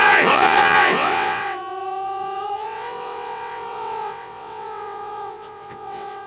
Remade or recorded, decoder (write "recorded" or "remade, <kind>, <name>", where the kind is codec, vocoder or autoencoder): remade, vocoder, WaveNeXt